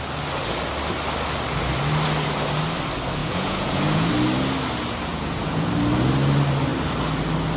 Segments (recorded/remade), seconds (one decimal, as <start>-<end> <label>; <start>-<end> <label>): 0.0-3.2 recorded; 3.2-4.1 remade; 4.1-5.1 recorded; 5.1-5.7 remade; 5.7-7.6 recorded